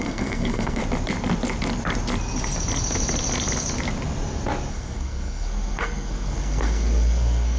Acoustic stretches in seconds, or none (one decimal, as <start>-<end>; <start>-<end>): 0.8-4.7